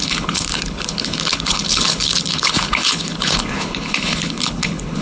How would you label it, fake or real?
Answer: fake